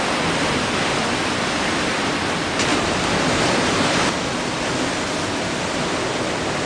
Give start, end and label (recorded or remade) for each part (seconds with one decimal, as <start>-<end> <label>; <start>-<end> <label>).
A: 0.0-6.7 recorded